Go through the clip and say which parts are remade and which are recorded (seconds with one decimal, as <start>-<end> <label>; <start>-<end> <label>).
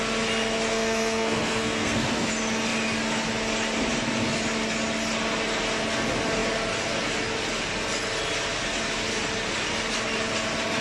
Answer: 0.0-0.7 recorded; 0.7-2.3 remade; 2.3-10.8 recorded